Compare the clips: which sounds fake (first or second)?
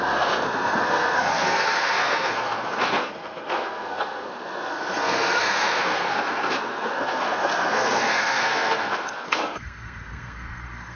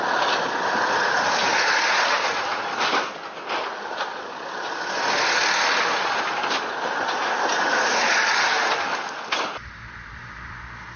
first